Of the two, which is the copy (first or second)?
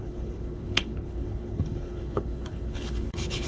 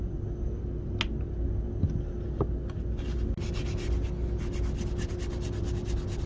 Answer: first